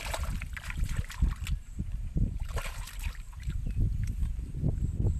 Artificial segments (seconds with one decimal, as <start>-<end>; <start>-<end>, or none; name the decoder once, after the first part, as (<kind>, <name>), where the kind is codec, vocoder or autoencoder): 1.6-3.7 (vocoder, BigVGAN v2)

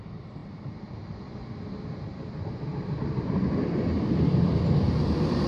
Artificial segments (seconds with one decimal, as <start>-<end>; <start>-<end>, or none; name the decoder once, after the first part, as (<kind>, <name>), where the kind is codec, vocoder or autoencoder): none